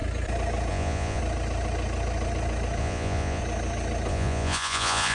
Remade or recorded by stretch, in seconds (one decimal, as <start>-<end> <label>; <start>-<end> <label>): 0.0-0.7 recorded; 0.7-1.2 remade; 1.2-2.8 recorded; 2.8-3.4 remade; 3.4-4.1 recorded; 4.1-5.1 remade

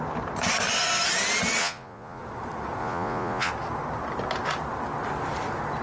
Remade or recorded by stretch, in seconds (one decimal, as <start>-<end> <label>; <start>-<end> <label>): 0.0-1.6 recorded; 1.6-2.2 remade; 2.2-2.8 recorded; 2.8-3.5 remade; 3.5-5.8 recorded

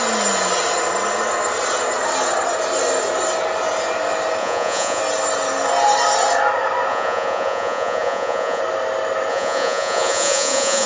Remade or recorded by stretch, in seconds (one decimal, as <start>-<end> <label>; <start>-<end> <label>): 0.0-4.4 recorded; 4.4-5.0 remade; 5.0-6.9 recorded; 6.9-8.6 remade; 8.6-9.3 recorded; 9.3-10.9 remade

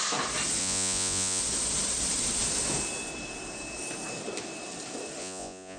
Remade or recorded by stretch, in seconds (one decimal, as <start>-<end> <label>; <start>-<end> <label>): 0.0-0.6 recorded; 0.6-1.4 remade; 1.4-5.2 recorded; 5.2-5.8 remade

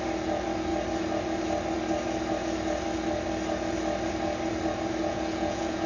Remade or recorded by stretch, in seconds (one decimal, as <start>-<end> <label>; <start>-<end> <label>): 0.0-5.1 recorded; 5.1-5.9 remade

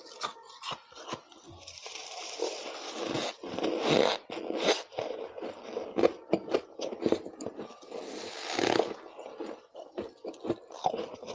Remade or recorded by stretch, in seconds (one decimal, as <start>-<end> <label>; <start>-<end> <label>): 0.0-11.3 recorded

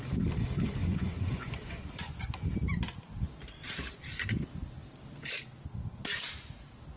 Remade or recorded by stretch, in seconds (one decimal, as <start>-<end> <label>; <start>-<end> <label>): 0.0-0.8 recorded; 0.8-2.5 remade; 2.5-7.0 recorded

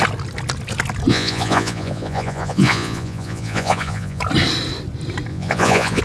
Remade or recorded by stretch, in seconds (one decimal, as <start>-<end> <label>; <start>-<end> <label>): 0.0-1.1 recorded; 1.1-4.2 remade; 4.2-5.3 recorded; 5.3-6.0 remade